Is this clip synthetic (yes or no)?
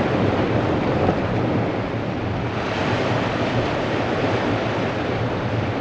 no